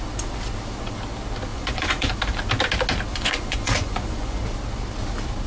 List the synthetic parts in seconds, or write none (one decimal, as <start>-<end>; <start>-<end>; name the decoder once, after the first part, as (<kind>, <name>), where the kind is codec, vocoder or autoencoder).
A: 1.5-2.1 (vocoder, Vocos); 3.1-4.4